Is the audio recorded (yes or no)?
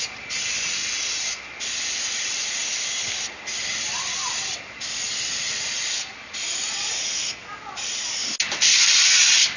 yes